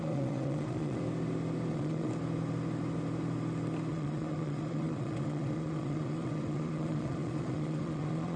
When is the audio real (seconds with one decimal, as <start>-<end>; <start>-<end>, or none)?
1.0-1.7; 2.1-3.9